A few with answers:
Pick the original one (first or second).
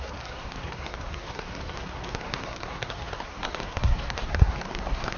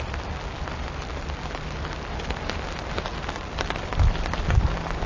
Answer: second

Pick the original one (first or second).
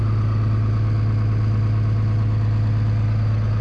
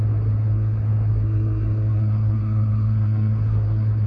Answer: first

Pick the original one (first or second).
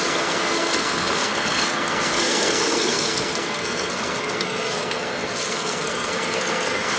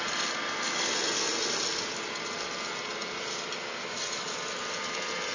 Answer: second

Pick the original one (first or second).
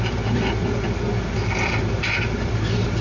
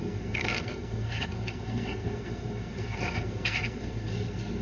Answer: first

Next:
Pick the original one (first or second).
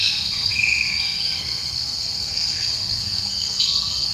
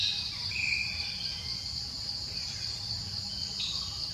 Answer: second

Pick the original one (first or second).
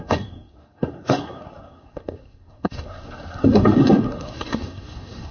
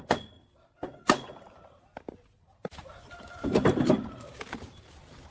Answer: second